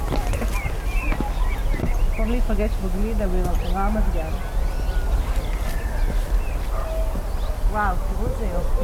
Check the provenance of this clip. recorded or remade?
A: recorded